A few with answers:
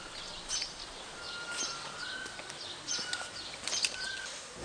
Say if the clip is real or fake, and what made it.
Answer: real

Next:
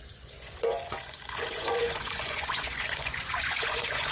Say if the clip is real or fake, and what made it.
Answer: fake, vocoder, Vocos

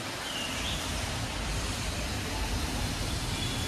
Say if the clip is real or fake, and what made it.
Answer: fake, vocoder, BigVGAN v2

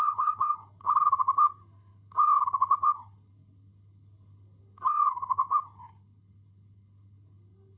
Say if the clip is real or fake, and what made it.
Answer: fake, codec, HILCodec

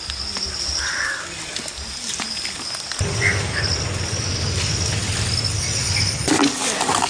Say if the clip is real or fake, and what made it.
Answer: real